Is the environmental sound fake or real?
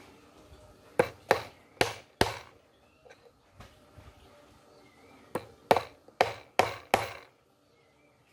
real